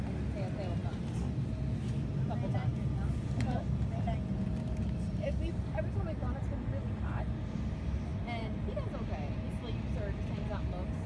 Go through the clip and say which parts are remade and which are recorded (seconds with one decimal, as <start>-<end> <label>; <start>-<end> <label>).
0.0-11.1 recorded

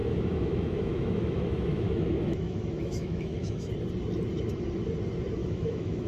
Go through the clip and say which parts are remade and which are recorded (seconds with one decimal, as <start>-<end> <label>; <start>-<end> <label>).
0.0-3.7 remade; 3.7-5.4 recorded; 5.4-6.1 remade

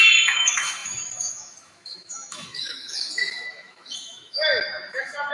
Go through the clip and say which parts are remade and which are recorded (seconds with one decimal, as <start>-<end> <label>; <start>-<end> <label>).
0.0-5.3 remade